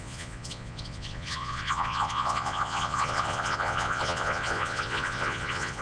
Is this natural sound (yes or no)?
no